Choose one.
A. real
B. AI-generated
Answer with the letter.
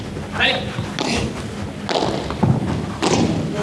A